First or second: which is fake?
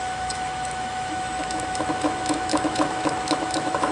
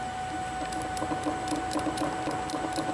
first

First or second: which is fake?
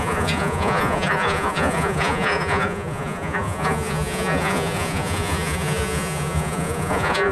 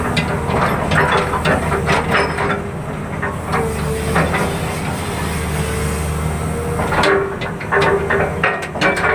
first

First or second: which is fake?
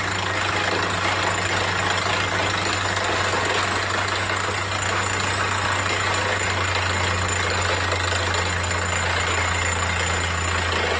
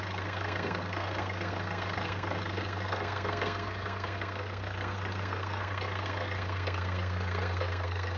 second